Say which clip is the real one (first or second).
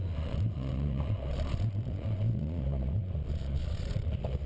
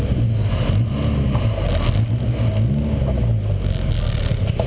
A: second